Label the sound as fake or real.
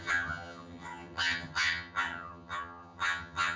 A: fake